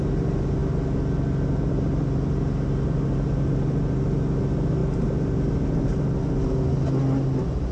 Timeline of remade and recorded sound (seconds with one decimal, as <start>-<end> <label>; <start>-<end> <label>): 0.0-7.7 recorded